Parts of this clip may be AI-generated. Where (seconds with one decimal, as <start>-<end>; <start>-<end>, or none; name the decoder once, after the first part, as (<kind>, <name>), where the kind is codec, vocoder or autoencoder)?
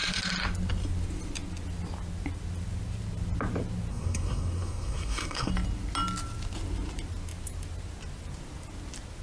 3.9-5.5 (codec, SNAC)